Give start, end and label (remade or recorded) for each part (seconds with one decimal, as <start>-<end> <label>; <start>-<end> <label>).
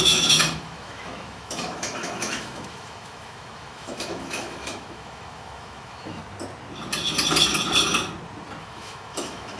0.0-6.2 remade; 6.2-8.6 recorded; 8.6-9.6 remade